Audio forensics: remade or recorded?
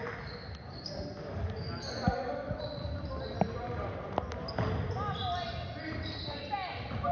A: recorded